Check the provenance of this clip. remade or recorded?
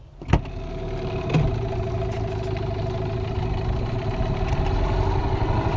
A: recorded